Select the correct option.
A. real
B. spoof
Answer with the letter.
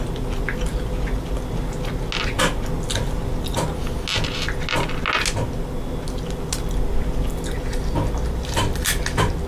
A